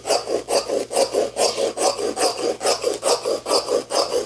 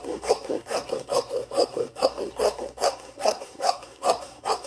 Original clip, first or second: first